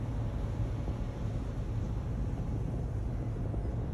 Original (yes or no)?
yes